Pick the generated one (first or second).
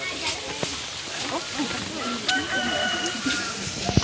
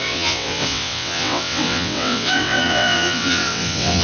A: second